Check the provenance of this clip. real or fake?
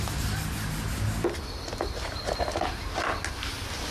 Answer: real